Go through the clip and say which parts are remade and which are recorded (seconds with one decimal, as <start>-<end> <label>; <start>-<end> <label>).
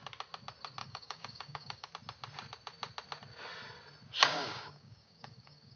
0.0-0.8 recorded; 0.8-1.9 remade; 1.9-4.3 recorded; 4.3-5.8 remade